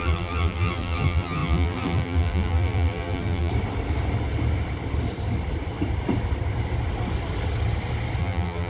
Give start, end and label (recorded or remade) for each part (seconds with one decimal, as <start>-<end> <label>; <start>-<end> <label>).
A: 0.0-3.5 remade; 3.5-8.2 recorded; 8.2-8.7 remade